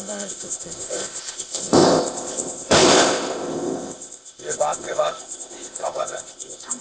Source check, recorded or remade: remade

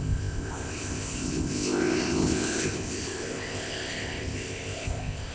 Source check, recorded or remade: remade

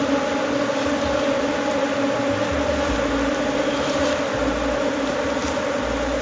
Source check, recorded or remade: recorded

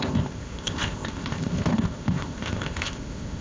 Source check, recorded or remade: remade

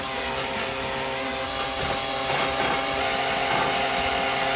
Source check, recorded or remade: recorded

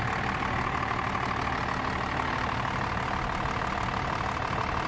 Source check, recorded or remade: recorded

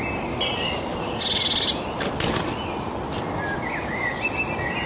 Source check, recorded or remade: recorded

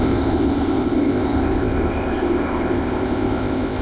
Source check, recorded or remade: remade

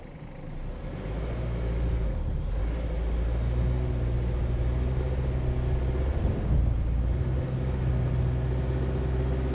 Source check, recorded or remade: recorded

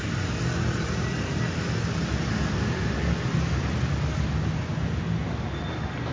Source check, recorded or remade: recorded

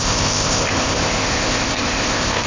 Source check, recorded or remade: remade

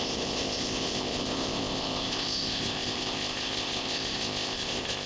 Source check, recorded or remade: remade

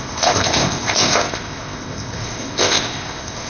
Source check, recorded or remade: remade